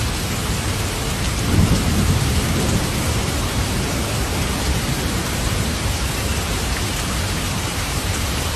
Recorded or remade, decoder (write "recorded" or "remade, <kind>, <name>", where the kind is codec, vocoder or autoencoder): remade, vocoder, BigVGAN v2